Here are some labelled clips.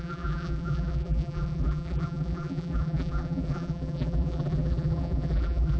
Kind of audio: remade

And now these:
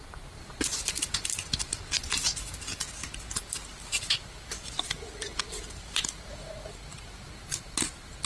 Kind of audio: recorded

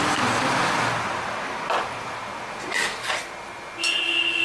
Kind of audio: recorded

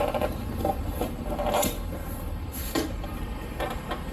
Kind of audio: remade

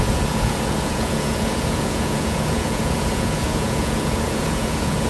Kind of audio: remade